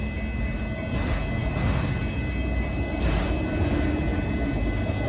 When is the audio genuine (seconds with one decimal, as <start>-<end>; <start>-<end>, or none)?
0.0-5.1

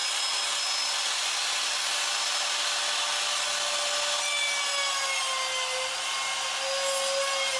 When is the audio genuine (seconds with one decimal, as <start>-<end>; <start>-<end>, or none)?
0.0-7.6